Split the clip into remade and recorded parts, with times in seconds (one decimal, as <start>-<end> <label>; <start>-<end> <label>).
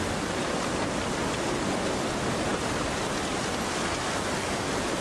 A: 0.0-5.0 recorded